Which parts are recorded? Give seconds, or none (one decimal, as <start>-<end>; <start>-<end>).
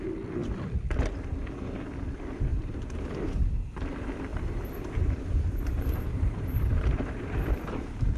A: 0.0-4.3